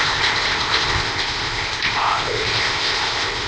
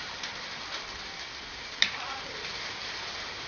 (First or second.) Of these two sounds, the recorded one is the second